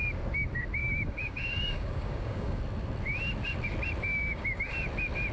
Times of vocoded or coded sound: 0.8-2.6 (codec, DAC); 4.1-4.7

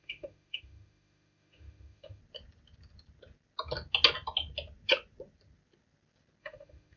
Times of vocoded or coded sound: 0.0-2.2 (autoencoder, DAC-VAE); 6.4-7.0

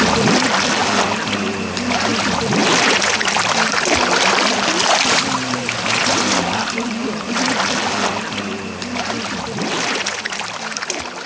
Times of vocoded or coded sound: none

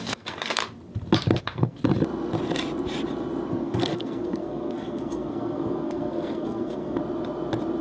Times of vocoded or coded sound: 0.0-0.6 (codec, SNAC); 1.4-1.8; 3.5-7.0

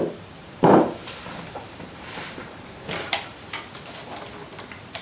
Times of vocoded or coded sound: 0.4-3.4 (vocoder, BigVGAN v2)